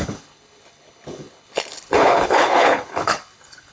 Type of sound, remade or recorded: remade